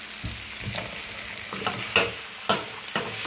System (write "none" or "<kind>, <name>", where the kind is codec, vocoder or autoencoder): none